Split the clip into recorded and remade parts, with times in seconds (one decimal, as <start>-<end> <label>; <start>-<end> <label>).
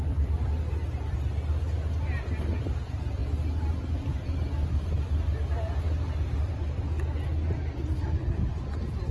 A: 0.0-9.1 recorded